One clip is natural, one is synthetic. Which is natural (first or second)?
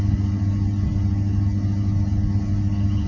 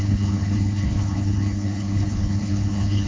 first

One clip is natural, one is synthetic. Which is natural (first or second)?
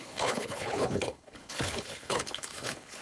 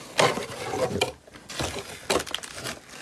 second